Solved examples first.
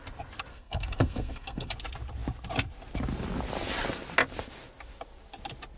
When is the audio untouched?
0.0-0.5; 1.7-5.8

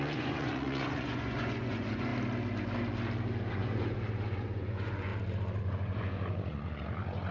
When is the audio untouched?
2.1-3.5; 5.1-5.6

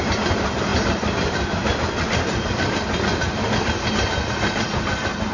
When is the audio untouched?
0.0-5.3

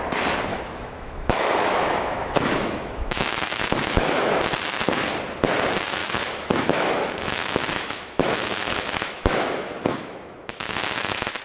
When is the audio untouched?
0.0-0.5; 4.3-6.0

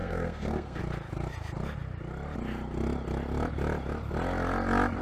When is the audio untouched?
0.8-5.0

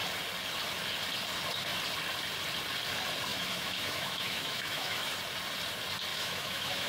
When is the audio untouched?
0.0-3.3; 5.1-6.1

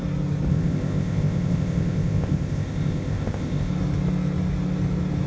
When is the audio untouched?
0.0-0.5; 3.7-5.3

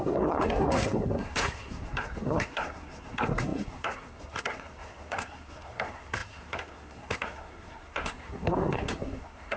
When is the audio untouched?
none